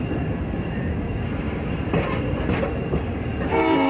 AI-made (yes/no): no